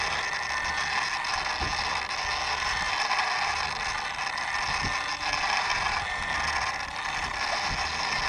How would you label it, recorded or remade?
recorded